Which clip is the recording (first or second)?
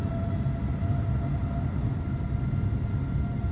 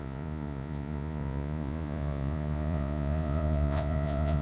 first